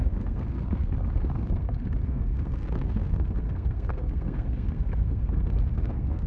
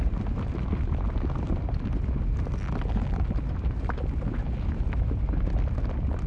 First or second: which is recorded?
second